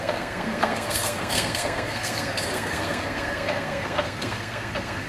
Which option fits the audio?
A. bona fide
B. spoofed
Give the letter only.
B